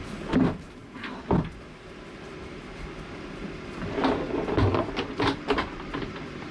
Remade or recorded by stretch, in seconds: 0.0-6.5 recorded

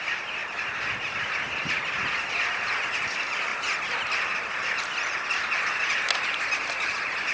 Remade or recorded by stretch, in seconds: 0.0-7.3 recorded

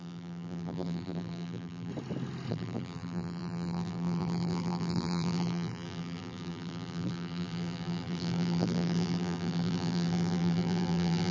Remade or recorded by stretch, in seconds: 0.0-1.9 remade; 1.9-2.5 recorded; 2.5-11.3 remade

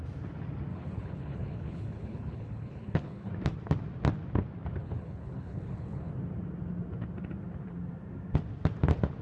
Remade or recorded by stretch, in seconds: 0.0-0.7 recorded; 0.7-3.3 remade; 3.3-4.8 recorded; 4.8-6.1 remade; 6.1-9.2 recorded

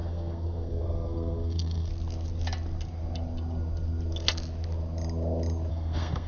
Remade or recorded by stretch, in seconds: 0.0-1.9 remade; 1.9-5.7 recorded; 5.7-6.3 remade